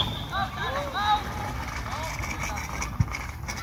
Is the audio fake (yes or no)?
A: no